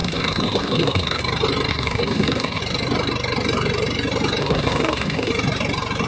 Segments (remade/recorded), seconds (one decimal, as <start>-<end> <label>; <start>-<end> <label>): 0.0-1.2 remade; 1.2-1.7 recorded; 1.7-2.6 remade; 2.6-4.4 recorded; 4.4-5.3 remade; 5.3-6.1 recorded